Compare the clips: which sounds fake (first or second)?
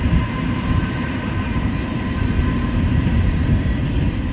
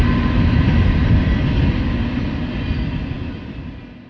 first